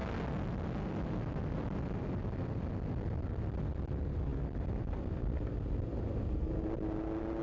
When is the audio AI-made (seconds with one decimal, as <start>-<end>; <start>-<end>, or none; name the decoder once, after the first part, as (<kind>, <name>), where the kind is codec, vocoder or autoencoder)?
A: none

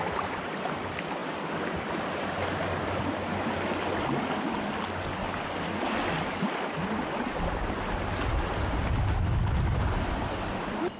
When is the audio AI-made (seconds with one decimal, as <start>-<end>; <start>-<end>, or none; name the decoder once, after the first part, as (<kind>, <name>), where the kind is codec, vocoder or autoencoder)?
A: none

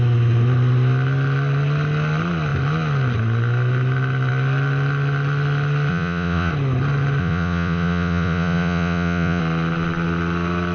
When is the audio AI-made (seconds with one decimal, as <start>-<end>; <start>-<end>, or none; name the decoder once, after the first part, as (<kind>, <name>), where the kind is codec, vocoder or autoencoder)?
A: 5.9-6.5 (vocoder, Vocos); 7.2-9.4